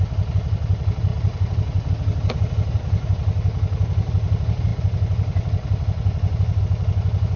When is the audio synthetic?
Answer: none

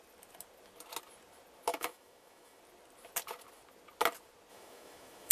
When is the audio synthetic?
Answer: 1.7-2.6 (autoencoder, DAC-VAE); 4.5-5.3

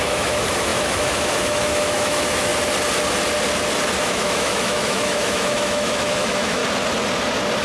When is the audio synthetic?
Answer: 0.0-2.5 (autoencoder, DAC-VAE); 4.0-6.6

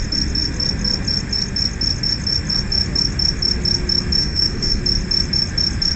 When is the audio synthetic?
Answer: 4.2-4.8 (autoencoder, DAC-VAE)

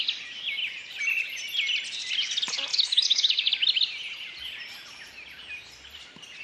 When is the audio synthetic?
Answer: 2.7-3.5 (autoencoder, DAC-VAE)

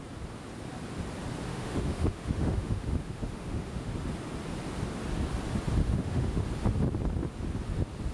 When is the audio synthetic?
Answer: 1.5-3.9 (autoencoder, DAC-VAE); 5.8-6.4

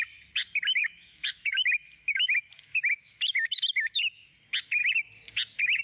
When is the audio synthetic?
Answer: 0.8-4.3 (autoencoder, DAC-VAE)